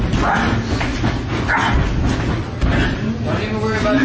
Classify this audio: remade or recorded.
recorded